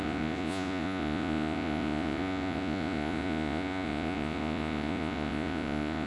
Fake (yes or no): yes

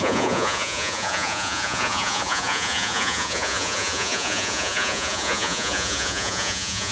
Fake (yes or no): yes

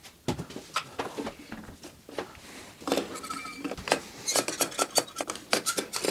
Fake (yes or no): no